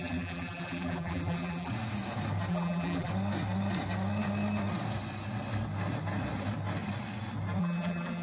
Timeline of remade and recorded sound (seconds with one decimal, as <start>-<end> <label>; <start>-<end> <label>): 0.0-1.7 remade; 1.7-2.5 recorded; 2.5-3.1 remade; 3.1-7.6 recorded; 7.6-8.2 remade